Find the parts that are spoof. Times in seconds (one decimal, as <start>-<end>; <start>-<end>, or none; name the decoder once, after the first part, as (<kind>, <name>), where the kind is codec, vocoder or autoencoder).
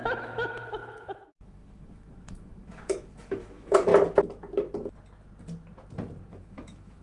0.0-3.9 (autoencoder, DAC-VAE); 6.3-7.0